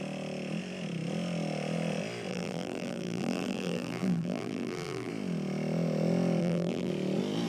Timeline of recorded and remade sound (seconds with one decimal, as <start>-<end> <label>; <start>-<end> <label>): 0.0-2.3 recorded; 2.3-5.1 remade; 5.1-6.4 recorded; 6.4-6.9 remade; 6.9-7.5 recorded